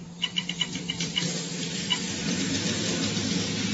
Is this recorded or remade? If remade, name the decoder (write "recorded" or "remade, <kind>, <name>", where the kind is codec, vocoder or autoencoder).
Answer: remade, vocoder, BigVGAN v2